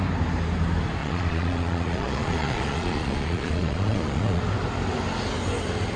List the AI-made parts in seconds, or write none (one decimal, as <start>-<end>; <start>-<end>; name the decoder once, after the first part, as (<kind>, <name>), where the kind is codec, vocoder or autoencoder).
1.0-4.4 (vocoder, Vocos)

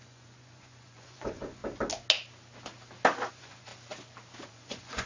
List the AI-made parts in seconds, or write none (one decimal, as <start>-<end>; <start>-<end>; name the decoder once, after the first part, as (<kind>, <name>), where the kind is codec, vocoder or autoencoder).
0.0-1.6 (vocoder, Vocos); 3.3-3.7; 4.5-5.1

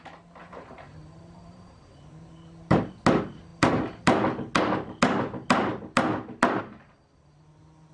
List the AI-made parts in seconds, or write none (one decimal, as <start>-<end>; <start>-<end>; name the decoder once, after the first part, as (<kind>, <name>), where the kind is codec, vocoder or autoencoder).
0.4-2.8 (vocoder, BigVGAN v2)

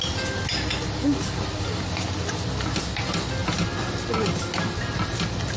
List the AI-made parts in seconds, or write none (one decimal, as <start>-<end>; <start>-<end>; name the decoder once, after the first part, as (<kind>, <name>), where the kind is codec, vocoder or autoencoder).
none

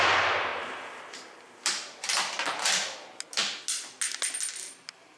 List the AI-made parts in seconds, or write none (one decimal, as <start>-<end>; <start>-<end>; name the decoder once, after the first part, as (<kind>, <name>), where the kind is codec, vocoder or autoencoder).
none

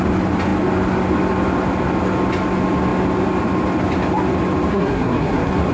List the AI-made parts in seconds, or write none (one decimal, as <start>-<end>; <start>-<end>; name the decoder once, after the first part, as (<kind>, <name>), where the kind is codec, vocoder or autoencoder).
4.7-5.7 (codec, SNAC)

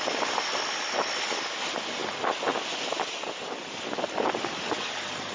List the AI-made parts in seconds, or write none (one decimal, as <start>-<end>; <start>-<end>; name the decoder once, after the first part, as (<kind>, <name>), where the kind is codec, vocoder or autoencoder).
none